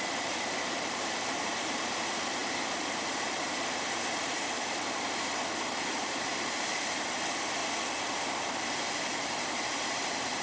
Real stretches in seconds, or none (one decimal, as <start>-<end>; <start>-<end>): 7.6-9.2